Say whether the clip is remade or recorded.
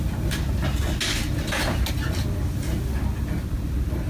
recorded